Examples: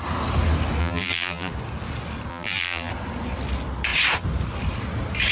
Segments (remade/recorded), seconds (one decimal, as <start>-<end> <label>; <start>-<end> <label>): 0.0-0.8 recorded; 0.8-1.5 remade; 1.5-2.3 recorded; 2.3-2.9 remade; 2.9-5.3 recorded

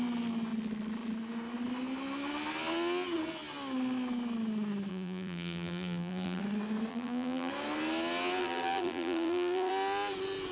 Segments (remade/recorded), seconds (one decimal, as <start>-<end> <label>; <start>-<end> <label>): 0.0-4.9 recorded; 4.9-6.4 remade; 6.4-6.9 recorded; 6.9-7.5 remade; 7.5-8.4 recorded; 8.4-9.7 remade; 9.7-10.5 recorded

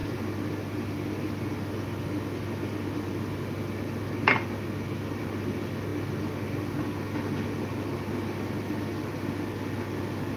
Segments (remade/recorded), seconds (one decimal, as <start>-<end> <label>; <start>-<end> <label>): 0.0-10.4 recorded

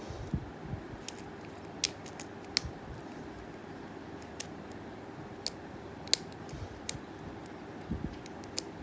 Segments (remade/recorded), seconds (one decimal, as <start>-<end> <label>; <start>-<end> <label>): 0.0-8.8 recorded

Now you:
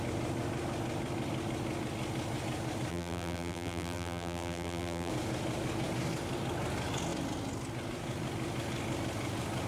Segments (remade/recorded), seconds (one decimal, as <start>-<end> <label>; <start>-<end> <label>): 0.0-2.9 recorded; 2.9-5.1 remade; 5.1-9.7 recorded